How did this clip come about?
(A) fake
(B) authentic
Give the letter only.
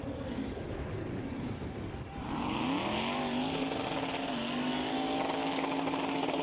B